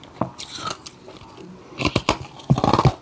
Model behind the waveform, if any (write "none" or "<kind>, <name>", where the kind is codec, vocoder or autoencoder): none